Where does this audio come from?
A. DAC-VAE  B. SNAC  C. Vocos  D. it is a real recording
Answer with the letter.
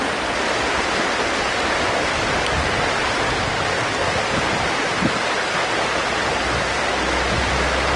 D